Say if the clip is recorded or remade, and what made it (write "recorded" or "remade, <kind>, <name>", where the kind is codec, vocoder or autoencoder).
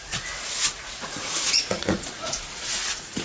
remade, vocoder, Vocos